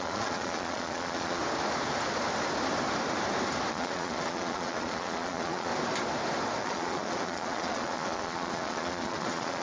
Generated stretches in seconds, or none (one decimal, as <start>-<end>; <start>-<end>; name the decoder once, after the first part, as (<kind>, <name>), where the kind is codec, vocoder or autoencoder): 0.0-1.4 (vocoder, Vocos); 3.7-5.7; 6.6-9.6